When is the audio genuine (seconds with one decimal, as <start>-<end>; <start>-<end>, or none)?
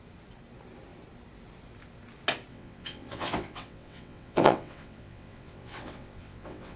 0.0-2.5